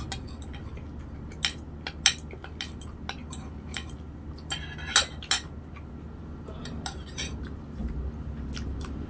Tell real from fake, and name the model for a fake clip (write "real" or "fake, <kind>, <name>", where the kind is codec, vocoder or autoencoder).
real